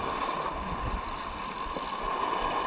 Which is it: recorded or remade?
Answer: recorded